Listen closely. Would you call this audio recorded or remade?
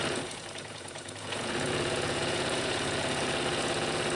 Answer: remade